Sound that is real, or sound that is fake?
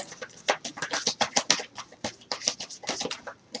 real